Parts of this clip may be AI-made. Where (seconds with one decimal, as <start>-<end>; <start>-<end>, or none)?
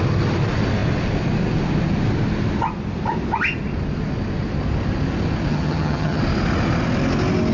5.5-6.2